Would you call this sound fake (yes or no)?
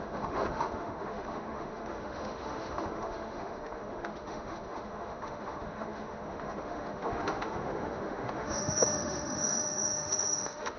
yes